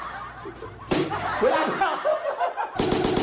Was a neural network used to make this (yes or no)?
no